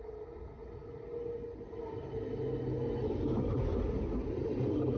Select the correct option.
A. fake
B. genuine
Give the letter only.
B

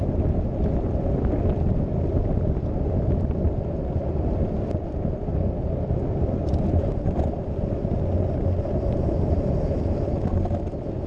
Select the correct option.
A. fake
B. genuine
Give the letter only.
B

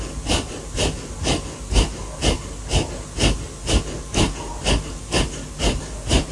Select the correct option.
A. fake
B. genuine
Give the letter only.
B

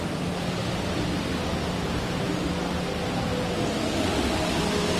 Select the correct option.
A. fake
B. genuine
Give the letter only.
B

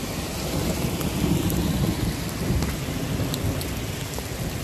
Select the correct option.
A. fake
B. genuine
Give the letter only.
B